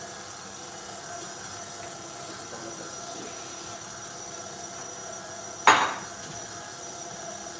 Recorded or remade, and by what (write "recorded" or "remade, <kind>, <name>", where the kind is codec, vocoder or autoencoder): recorded